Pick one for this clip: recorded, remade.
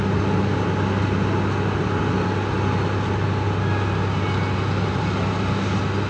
recorded